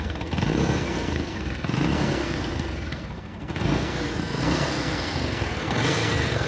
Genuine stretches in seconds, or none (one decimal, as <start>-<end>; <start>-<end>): none